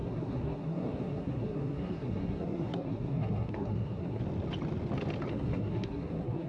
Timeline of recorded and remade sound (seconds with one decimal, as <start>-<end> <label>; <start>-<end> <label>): 0.0-4.2 remade; 4.2-5.3 recorded; 5.3-6.5 remade